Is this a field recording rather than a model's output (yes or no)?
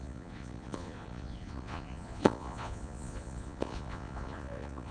no